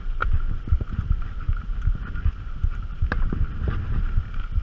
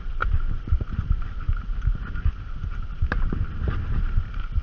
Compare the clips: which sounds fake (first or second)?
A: second